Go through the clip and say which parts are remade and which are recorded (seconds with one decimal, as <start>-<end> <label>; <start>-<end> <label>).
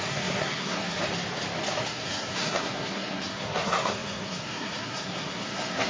0.0-1.0 remade; 1.0-1.8 recorded; 1.8-5.9 remade